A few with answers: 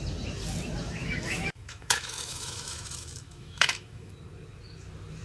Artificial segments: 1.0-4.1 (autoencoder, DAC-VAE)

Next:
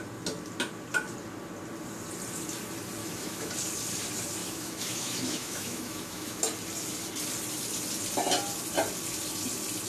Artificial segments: 3.0-3.5 (autoencoder, DAC-VAE); 4.4-6.4